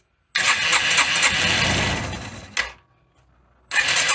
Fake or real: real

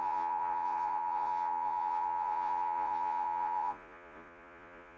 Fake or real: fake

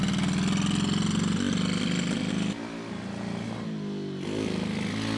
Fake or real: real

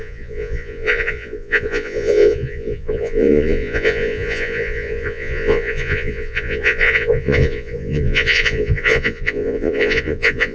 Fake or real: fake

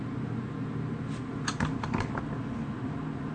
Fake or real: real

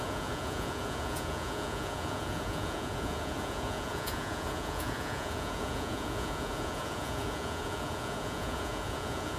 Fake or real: fake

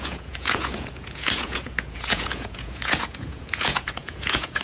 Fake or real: fake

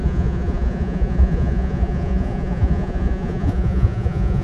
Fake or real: fake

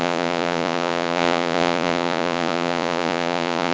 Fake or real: fake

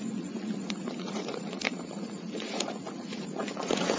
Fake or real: fake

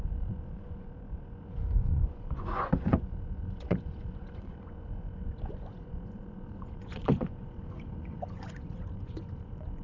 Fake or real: fake